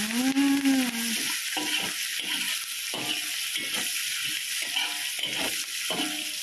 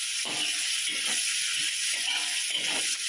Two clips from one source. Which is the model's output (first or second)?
second